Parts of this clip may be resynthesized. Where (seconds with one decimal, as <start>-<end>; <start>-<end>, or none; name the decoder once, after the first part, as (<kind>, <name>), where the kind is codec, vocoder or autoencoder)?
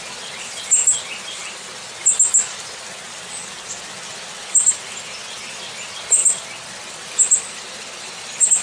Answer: none